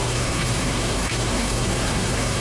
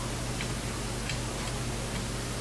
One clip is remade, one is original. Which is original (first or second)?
second